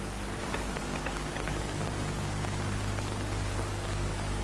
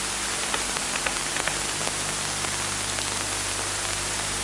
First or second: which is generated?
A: first